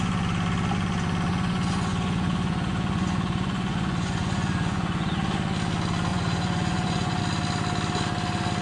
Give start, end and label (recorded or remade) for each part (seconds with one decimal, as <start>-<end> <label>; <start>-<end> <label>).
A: 0.0-1.3 recorded; 1.3-5.2 remade; 5.2-6.1 recorded; 6.1-7.2 remade; 7.2-8.6 recorded